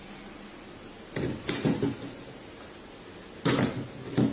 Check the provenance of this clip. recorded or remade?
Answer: recorded